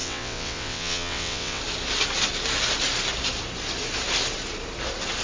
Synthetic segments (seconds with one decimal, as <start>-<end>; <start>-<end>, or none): 0.0-1.6